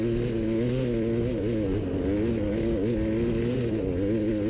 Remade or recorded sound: recorded